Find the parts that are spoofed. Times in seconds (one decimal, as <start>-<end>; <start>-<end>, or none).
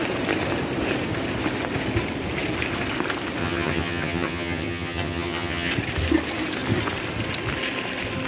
3.4-5.7